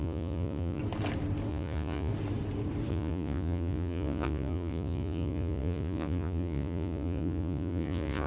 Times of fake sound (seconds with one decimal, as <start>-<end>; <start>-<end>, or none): 0.0-0.8; 1.5-2.1; 2.9-8.3